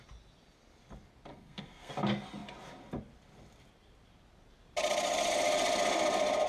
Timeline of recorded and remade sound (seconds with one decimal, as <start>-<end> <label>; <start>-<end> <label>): 0.0-1.3 recorded; 1.3-1.9 remade; 1.9-6.5 recorded